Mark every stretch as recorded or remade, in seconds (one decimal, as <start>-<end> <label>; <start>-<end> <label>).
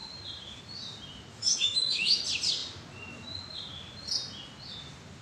0.0-1.3 recorded; 1.3-2.2 remade; 2.2-5.2 recorded